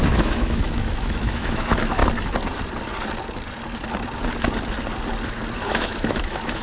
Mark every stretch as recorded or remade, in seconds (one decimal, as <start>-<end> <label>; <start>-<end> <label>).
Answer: 0.0-2.0 remade; 2.0-5.6 recorded; 5.6-6.6 remade